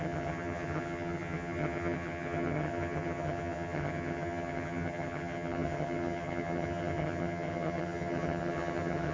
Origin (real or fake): fake